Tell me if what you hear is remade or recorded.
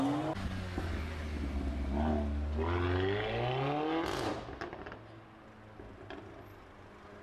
recorded